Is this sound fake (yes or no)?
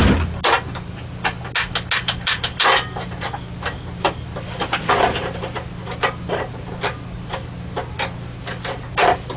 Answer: no